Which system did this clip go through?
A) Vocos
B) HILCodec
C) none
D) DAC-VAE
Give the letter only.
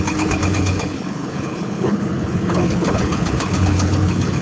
B